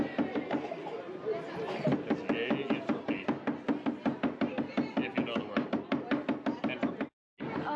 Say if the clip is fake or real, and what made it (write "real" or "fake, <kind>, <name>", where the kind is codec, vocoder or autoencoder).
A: real